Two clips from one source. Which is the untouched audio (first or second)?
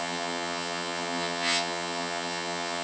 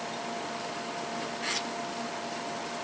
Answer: second